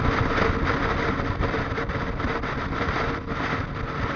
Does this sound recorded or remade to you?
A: recorded